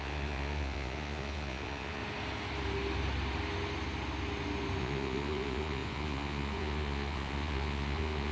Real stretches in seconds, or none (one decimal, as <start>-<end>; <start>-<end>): 2.0-4.8